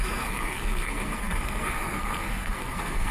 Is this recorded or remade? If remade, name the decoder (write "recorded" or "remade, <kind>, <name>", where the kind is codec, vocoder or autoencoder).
remade, codec, SNAC